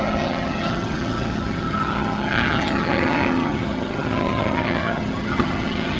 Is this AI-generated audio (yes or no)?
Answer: yes